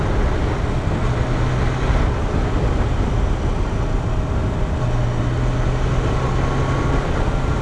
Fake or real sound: real